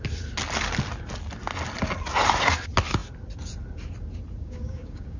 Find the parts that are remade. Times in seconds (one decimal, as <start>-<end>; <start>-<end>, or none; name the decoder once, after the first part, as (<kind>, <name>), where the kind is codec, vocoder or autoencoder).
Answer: 4.4-5.2 (codec, DAC)